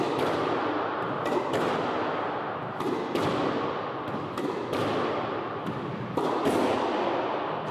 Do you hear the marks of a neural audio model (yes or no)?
no